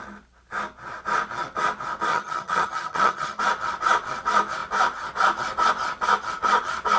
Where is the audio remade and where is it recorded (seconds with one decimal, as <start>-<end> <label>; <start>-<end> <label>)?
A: 0.0-2.1 recorded; 2.1-3.4 remade; 3.4-7.0 recorded